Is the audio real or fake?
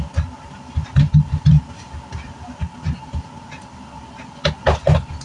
real